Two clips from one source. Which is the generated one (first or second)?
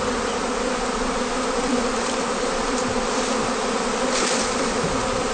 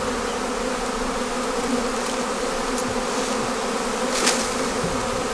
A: first